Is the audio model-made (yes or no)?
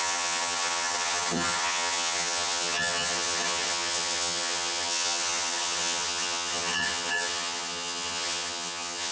yes